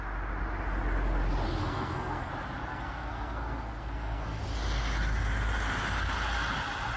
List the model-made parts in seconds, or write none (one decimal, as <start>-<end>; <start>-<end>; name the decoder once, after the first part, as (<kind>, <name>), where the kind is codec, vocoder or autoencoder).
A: 1.6-2.3 (codec, SNAC); 2.7-4.4